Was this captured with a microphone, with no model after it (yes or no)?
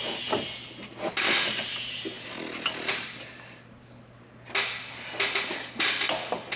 yes